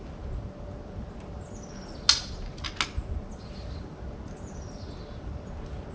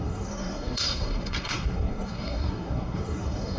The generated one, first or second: second